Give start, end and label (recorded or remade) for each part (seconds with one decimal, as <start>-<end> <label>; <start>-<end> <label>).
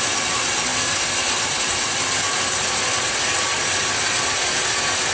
0.0-5.1 recorded